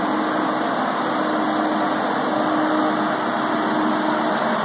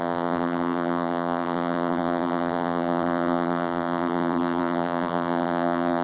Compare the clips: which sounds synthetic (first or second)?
second